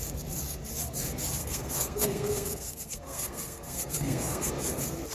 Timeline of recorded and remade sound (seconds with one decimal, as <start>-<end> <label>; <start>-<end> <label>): 0.0-1.4 recorded; 1.4-4.5 remade; 4.5-5.1 recorded